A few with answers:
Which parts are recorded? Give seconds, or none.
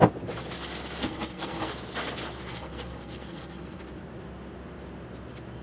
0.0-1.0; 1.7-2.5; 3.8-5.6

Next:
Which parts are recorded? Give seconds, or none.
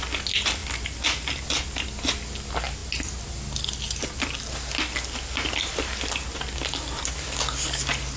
0.0-8.2